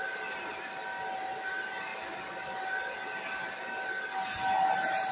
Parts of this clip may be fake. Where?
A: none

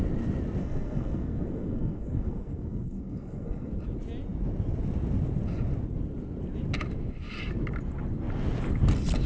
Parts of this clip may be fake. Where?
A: 0.6-3.7

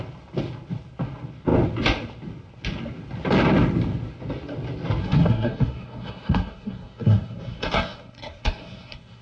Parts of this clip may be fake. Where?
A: 5.0-9.2

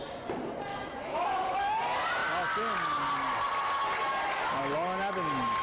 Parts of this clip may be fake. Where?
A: 0.7-1.4